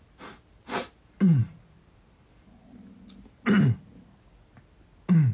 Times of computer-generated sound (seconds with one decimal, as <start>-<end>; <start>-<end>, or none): none